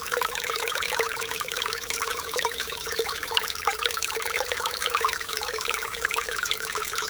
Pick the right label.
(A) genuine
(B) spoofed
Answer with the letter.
B